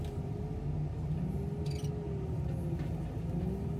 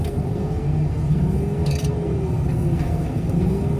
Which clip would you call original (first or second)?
first